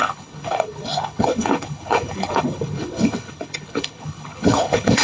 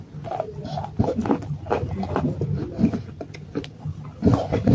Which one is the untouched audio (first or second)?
second